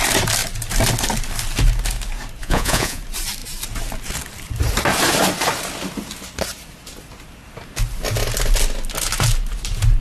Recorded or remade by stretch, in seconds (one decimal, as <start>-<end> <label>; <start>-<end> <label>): 0.0-2.4 recorded; 2.4-3.0 remade; 3.0-10.0 recorded